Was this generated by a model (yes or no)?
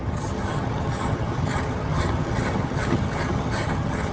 yes